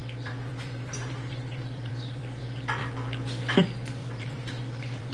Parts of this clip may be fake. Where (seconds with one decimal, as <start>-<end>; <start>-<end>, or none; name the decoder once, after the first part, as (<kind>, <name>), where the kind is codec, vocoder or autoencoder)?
0.0-2.4 (vocoder, BigVGAN v2); 4.0-5.1